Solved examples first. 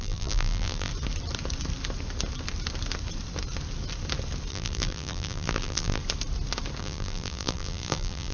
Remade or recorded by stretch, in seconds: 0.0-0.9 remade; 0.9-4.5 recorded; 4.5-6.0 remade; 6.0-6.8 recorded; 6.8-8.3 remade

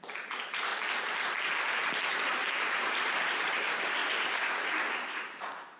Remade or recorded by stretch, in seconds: 0.0-0.7 remade; 0.7-2.7 recorded; 2.7-4.0 remade; 4.0-4.5 recorded; 4.5-5.8 remade

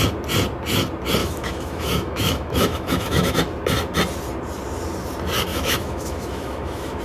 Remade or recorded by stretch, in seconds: 0.0-1.2 recorded; 1.2-3.4 remade; 3.4-5.5 recorded; 5.5-7.0 remade